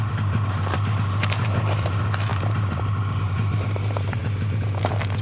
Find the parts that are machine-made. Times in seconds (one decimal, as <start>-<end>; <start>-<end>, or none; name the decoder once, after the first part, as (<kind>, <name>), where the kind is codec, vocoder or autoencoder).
0.0-4.2 (vocoder, BigVGAN v2)